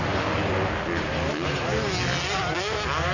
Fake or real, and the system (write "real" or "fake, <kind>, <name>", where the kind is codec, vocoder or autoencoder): real